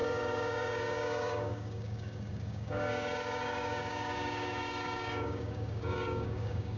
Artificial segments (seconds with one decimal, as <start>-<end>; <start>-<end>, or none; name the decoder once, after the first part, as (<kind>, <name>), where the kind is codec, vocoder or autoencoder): 0.0-6.8 (codec, DAC)